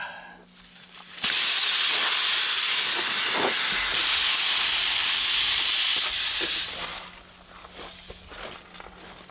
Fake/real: real